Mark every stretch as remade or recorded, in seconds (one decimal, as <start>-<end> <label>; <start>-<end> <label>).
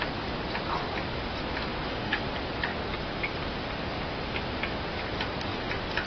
0.0-1.7 recorded; 1.7-2.2 remade; 2.2-6.1 recorded